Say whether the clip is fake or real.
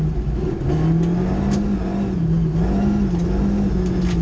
real